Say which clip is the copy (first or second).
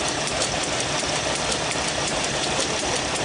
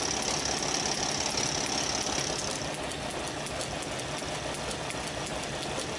first